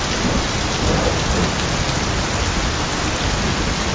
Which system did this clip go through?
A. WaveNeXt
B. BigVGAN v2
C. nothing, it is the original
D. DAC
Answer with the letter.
C